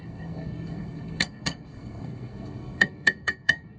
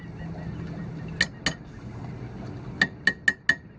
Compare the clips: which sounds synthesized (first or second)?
first